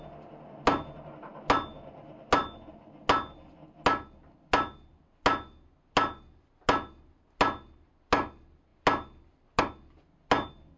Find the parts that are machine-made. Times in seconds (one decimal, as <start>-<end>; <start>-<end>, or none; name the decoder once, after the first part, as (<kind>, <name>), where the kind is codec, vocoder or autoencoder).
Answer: none